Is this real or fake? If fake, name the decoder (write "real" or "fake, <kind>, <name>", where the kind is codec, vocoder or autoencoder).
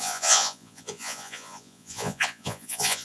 fake, vocoder, Vocos